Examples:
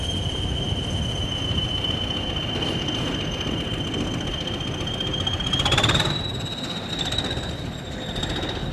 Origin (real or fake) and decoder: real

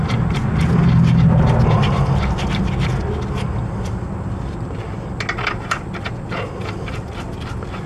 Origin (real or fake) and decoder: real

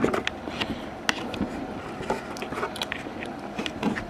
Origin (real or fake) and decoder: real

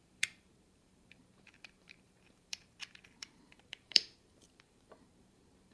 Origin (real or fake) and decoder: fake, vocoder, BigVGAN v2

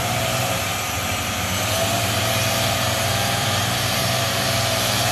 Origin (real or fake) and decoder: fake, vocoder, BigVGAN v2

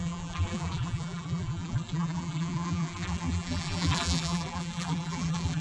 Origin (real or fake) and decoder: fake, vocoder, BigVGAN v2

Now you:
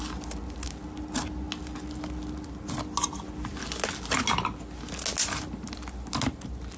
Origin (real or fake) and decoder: real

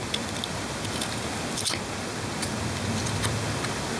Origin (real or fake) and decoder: real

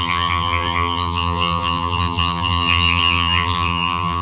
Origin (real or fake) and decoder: fake, vocoder, BigVGAN v2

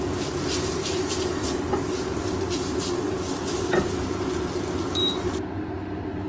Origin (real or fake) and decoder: real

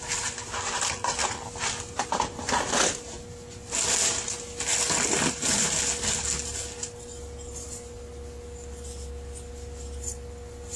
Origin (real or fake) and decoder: real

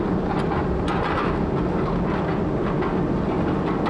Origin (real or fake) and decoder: real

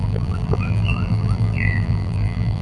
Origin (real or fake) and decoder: fake, vocoder, BigVGAN v2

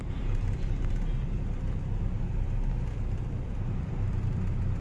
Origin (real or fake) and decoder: fake, vocoder, BigVGAN v2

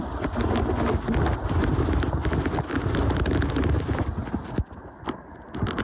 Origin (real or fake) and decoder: real